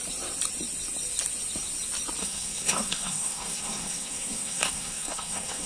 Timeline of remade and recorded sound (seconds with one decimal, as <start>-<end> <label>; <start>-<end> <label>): 0.0-2.2 recorded; 2.2-5.7 remade